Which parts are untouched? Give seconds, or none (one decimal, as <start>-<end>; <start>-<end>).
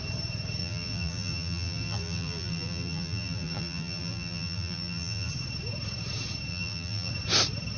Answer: 0.0-0.6; 5.3-6.5; 7.1-7.8